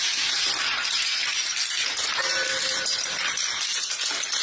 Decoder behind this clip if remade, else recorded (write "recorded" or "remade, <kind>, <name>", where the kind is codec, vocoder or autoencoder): recorded